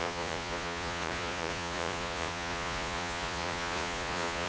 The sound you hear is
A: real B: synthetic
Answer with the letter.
B